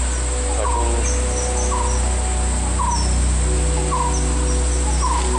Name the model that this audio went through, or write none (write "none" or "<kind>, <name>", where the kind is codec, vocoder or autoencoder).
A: none